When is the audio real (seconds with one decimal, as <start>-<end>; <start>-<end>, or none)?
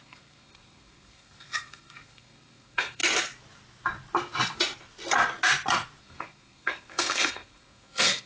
3.0-6.0